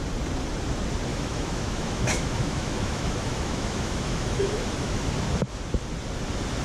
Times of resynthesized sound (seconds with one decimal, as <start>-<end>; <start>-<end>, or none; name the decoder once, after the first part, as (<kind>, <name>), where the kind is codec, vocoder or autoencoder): 1.1-5.1 (autoencoder, DAC-VAE)